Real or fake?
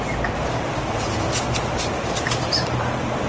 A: real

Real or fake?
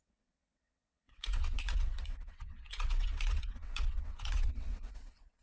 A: fake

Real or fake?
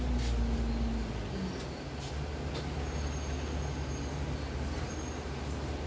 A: real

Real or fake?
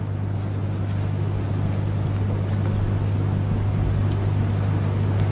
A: real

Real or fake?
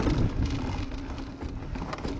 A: real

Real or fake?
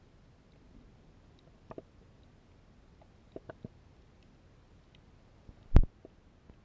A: real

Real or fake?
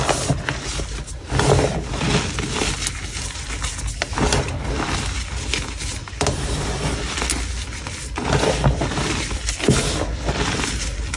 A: real